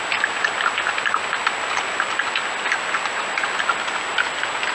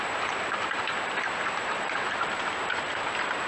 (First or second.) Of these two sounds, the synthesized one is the second